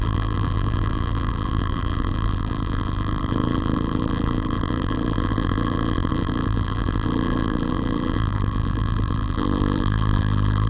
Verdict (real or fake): fake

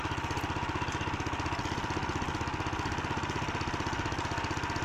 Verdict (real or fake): real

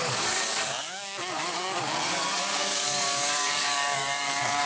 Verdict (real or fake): fake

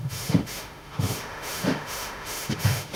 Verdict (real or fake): fake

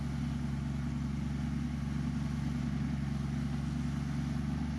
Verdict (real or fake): real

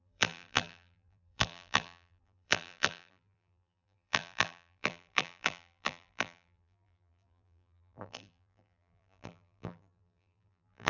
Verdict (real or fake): fake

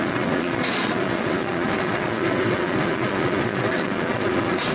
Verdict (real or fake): fake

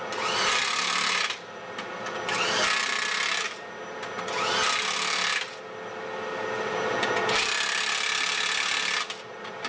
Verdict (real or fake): real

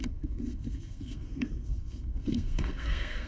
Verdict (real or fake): fake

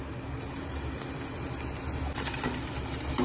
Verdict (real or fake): real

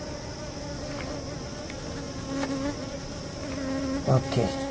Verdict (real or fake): real